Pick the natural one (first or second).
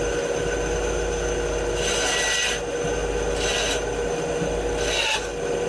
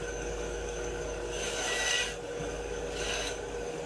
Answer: first